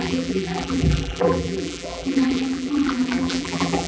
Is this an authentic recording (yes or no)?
no